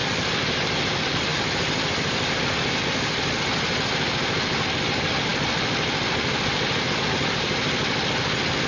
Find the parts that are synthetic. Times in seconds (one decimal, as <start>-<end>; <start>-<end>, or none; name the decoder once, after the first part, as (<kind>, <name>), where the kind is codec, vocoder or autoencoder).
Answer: 5.3-7.5 (vocoder, BigVGAN v2)